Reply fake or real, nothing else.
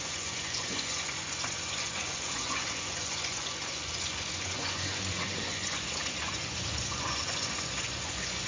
fake